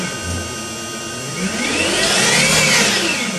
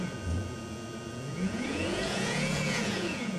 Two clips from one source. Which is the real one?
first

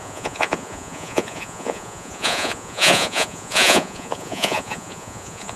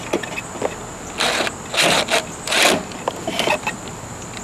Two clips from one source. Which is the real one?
second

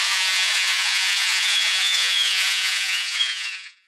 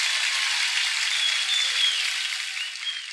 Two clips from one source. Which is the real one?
second